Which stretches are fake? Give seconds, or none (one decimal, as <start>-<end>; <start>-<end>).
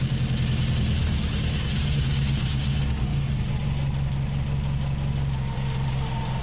1.0-3.5